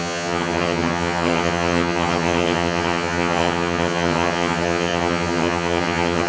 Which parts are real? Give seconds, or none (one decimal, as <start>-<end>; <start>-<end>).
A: none